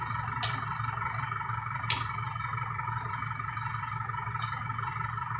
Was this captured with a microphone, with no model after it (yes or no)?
yes